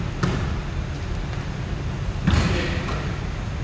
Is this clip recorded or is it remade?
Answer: recorded